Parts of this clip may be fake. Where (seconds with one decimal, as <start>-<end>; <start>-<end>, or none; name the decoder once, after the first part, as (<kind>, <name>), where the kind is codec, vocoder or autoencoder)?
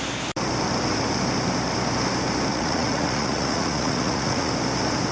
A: 2.5-4.5 (vocoder, Vocos)